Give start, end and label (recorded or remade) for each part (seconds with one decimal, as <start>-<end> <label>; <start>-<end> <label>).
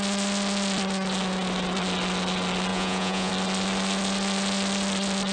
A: 0.0-2.7 recorded; 2.7-3.3 remade; 3.3-5.3 recorded